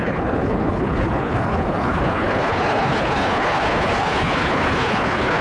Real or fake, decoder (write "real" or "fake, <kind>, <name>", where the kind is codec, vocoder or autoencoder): fake, codec, HILCodec